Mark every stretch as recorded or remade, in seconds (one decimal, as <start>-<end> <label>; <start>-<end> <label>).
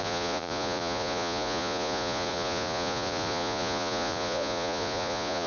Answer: 0.0-5.5 remade